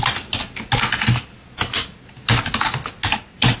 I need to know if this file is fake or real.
real